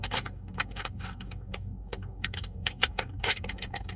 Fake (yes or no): yes